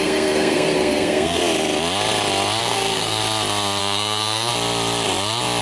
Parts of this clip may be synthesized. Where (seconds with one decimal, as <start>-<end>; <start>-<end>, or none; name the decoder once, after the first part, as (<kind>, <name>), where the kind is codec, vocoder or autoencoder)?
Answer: 0.0-1.4 (codec, SNAC); 2.6-3.2; 3.8-4.5